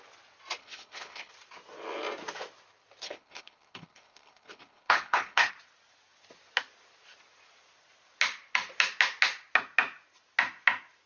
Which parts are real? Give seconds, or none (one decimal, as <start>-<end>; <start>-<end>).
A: 0.0-0.6; 1.3-3.0; 5.5-11.1